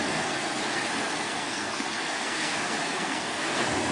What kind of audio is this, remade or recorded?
remade